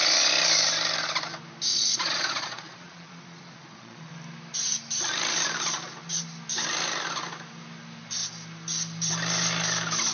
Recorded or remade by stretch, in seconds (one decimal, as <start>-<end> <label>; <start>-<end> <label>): 0.0-1.7 recorded; 1.7-4.1 remade; 4.1-10.1 recorded